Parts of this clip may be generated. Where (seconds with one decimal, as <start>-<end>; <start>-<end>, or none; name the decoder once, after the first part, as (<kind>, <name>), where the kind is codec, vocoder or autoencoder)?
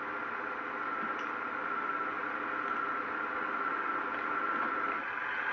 none